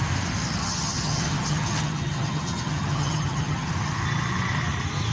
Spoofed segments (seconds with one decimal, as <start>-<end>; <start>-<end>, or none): 0.6-3.7